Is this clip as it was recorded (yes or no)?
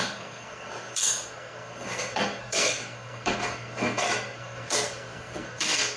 no